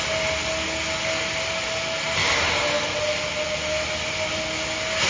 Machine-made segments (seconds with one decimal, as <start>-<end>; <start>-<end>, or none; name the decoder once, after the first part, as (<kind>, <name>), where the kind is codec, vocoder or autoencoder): none